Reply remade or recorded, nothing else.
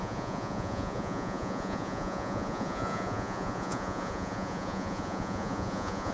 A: remade